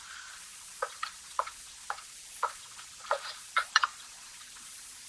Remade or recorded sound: remade